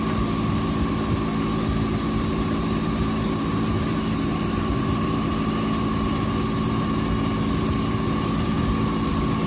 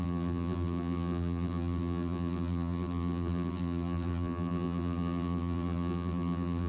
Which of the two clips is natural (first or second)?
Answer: first